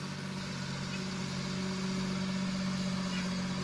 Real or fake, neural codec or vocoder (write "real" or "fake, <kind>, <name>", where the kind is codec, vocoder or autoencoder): real